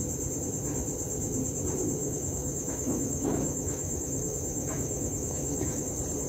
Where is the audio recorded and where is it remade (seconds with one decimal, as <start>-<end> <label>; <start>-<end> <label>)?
0.0-2.0 recorded; 2.0-5.8 remade; 5.8-6.3 recorded